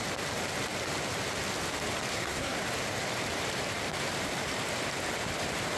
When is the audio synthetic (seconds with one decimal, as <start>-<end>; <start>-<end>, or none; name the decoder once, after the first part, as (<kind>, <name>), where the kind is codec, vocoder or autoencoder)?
2.1-2.6 (codec, SNAC)